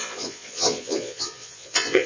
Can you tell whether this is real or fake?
fake